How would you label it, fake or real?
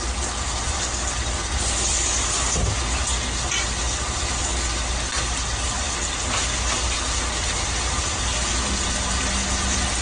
real